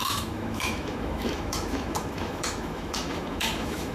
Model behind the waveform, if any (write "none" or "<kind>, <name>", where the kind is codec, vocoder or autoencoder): autoencoder, DAC-VAE